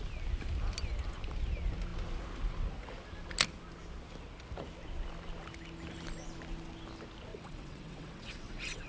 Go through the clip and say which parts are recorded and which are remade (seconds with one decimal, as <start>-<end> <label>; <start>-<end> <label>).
0.0-7.3 recorded; 7.3-8.9 remade